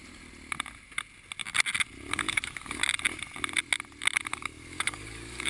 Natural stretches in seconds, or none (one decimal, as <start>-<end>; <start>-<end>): 0.0-2.1; 2.8-4.3